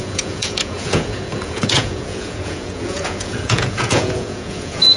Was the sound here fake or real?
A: fake